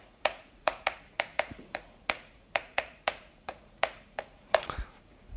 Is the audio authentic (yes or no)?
no